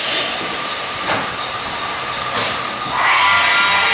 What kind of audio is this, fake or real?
real